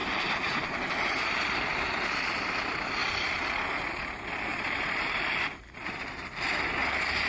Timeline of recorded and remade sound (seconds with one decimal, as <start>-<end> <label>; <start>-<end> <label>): 0.0-1.8 remade; 1.8-4.5 recorded; 4.5-5.6 remade; 5.6-7.3 recorded